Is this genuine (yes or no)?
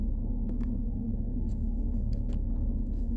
no